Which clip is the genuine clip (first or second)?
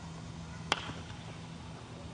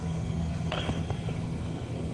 first